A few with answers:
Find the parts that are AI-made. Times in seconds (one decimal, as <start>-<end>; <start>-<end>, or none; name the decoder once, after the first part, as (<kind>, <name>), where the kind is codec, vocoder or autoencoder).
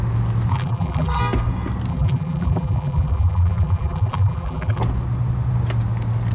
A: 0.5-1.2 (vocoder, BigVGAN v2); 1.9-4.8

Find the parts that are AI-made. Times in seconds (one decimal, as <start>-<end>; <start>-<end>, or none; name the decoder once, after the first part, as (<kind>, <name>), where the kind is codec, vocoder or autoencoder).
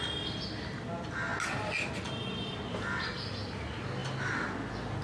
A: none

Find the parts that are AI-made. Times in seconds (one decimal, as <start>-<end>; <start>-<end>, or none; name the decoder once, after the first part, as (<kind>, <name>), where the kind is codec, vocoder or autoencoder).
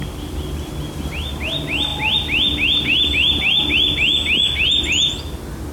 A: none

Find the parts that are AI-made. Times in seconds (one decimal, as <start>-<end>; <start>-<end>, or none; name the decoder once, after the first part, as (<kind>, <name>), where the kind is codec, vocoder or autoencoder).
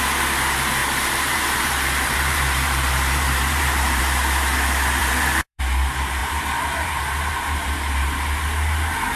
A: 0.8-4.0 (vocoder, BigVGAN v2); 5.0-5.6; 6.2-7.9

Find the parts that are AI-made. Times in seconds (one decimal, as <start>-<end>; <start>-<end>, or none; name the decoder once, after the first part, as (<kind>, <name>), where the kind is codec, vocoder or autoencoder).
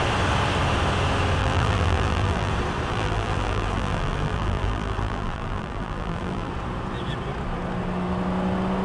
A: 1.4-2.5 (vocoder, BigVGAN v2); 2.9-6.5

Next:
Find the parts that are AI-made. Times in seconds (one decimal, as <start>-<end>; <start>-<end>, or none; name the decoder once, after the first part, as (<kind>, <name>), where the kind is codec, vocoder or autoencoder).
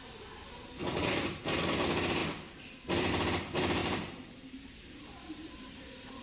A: 0.8-1.4 (vocoder, BigVGAN v2); 3.8-6.2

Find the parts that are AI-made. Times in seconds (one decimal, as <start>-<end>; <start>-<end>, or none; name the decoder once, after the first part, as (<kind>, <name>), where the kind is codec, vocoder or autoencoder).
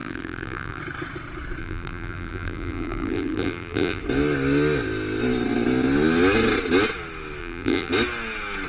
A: 0.0-0.8 (vocoder, BigVGAN v2); 1.6-4.0; 7.4-7.9